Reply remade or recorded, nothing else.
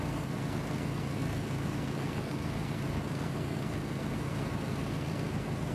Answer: remade